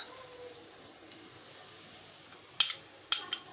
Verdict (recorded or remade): recorded